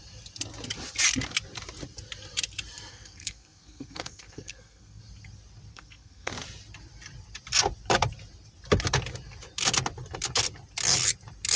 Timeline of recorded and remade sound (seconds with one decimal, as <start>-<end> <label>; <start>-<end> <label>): 0.0-2.9 recorded; 2.9-5.0 remade; 5.0-5.7 recorded; 5.7-6.3 remade; 6.3-11.6 recorded